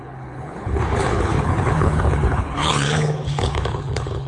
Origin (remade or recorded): remade